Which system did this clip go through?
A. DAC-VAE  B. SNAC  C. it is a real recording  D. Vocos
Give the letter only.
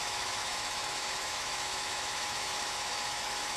A